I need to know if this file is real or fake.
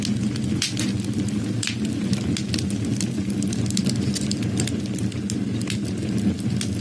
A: real